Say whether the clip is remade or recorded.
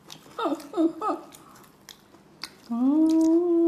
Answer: recorded